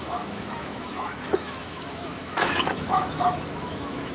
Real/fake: fake